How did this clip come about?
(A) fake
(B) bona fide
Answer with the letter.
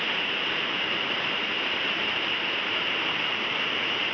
A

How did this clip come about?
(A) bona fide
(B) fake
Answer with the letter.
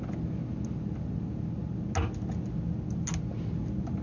A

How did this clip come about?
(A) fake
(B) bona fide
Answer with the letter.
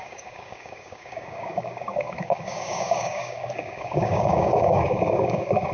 A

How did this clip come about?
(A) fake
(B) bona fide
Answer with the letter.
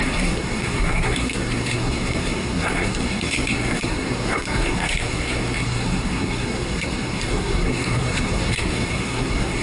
A